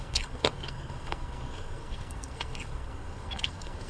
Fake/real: fake